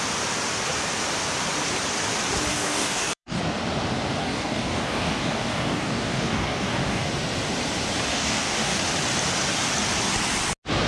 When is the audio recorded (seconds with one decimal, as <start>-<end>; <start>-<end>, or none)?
0.0-2.5; 3.4-4.2; 7.1-8.1; 8.8-10.9